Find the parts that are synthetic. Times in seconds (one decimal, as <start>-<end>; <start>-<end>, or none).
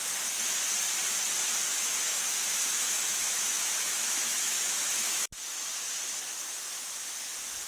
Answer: 1.7-6.0; 6.7-7.7